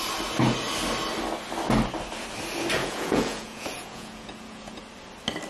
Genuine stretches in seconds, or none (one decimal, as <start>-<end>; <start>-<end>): 0.0-2.8; 4.8-5.5